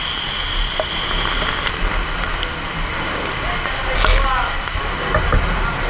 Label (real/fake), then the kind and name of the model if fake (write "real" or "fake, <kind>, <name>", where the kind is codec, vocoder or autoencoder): real